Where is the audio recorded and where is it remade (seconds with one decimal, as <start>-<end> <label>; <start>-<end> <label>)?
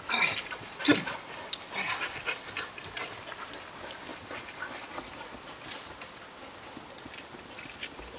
0.0-8.2 recorded